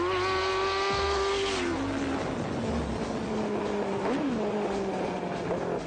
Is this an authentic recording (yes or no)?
yes